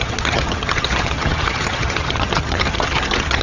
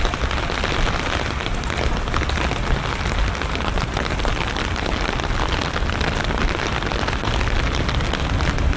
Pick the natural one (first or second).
second